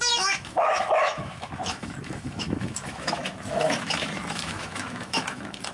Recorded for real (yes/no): no